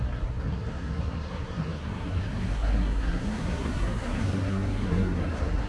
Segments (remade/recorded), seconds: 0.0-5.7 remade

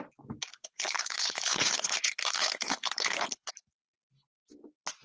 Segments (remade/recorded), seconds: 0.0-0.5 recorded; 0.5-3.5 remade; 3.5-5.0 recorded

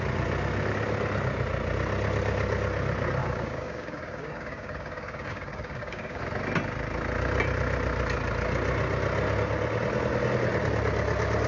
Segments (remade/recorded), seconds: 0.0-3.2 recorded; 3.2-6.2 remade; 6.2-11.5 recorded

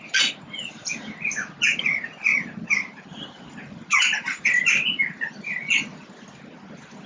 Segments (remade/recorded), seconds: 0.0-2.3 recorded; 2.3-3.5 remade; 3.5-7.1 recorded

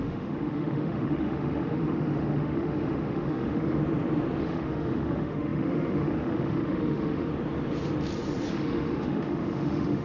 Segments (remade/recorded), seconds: 0.0-3.8 remade; 3.8-4.4 recorded; 4.4-7.3 remade; 7.3-8.5 recorded; 8.5-10.0 remade

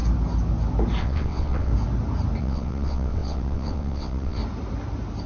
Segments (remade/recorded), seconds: 0.0-1.0 recorded; 1.0-1.7 remade; 1.7-2.4 recorded; 2.4-4.4 remade; 4.4-5.3 recorded

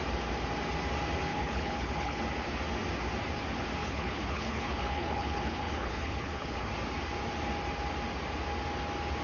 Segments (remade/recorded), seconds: 0.0-1.3 recorded; 1.3-2.2 remade; 2.2-3.8 recorded; 3.8-6.7 remade; 6.7-9.2 recorded

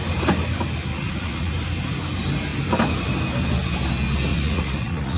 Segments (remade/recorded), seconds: 0.0-0.9 recorded; 0.9-1.5 remade; 1.5-4.3 recorded; 4.3-5.2 remade